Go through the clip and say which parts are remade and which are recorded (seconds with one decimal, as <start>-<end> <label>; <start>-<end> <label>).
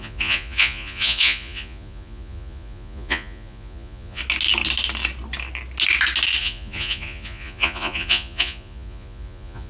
0.0-4.2 remade; 4.2-6.4 recorded; 6.4-9.7 remade